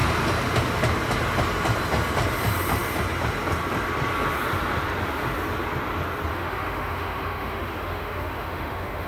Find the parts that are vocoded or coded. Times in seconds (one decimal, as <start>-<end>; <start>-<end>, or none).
6.3-9.1

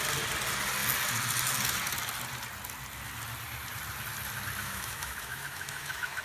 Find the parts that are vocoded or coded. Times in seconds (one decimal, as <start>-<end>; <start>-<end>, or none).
4.6-6.2

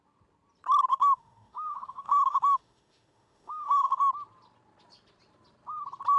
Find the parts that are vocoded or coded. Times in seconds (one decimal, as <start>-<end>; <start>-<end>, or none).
0.9-4.0